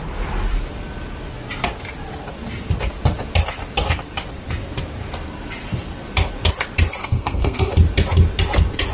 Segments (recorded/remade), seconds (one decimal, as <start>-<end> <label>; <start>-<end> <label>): 0.0-7.0 recorded; 7.0-7.7 remade; 7.7-8.9 recorded